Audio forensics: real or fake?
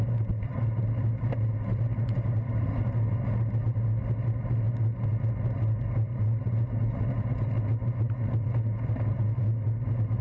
real